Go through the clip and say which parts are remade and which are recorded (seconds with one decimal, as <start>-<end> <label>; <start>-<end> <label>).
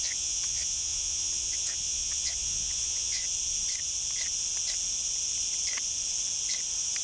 0.0-3.2 remade; 3.2-7.0 recorded